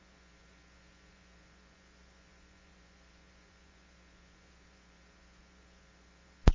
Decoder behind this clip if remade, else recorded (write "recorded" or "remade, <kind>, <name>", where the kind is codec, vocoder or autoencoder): remade, vocoder, Vocos